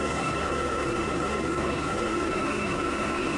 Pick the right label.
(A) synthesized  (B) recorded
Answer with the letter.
A